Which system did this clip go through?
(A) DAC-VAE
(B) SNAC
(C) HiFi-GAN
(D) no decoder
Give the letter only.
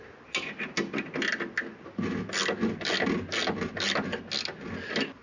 D